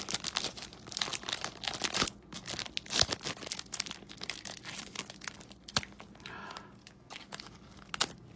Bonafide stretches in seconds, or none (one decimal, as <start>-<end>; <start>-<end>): 0.0-6.8; 7.9-8.4